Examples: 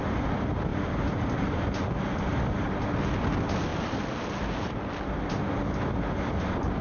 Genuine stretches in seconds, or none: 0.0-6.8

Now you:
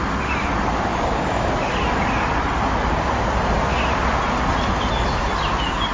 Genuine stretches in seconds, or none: 0.0-0.9; 1.5-5.9

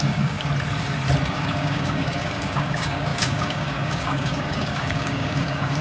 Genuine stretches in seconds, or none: 0.5-1.3

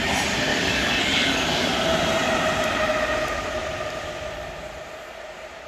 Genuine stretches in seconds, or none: 0.0-0.5; 1.7-5.7

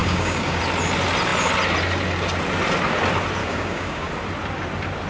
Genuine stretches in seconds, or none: 0.6-3.4; 4.1-5.1

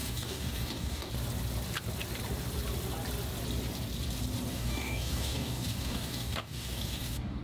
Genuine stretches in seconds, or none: 1.1-4.5

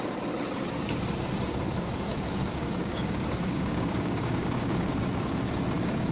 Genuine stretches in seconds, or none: 0.0-2.1; 5.5-6.1

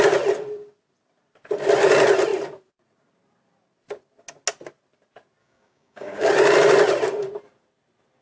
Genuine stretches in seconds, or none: 0.0-5.4; 6.3-8.2